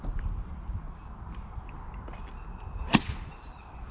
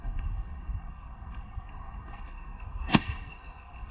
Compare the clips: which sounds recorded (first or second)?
first